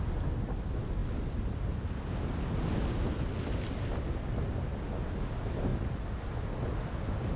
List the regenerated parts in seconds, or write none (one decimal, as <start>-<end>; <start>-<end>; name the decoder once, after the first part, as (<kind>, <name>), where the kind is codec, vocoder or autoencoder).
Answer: none